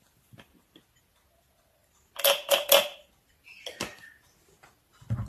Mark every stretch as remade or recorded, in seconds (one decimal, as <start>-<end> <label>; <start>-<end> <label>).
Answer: 0.0-5.3 recorded